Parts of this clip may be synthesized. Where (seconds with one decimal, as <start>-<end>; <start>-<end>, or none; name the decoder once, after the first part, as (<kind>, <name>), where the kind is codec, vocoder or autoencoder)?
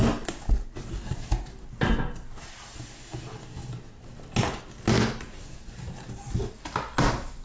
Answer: none